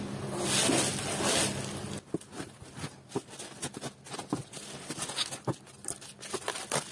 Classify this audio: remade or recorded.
recorded